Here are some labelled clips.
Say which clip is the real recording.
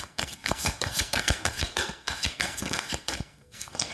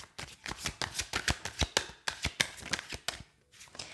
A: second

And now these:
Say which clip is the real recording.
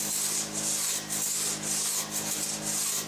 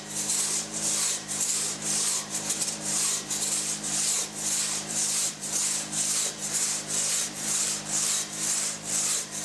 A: first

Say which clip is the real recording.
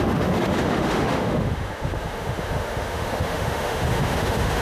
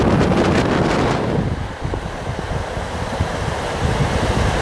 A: second